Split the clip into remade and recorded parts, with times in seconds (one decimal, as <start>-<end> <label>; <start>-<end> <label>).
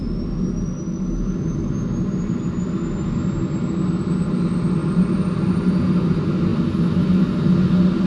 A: 0.0-8.1 recorded